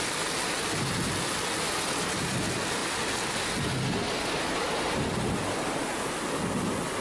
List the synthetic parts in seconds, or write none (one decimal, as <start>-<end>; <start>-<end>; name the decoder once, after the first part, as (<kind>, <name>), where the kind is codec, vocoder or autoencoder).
none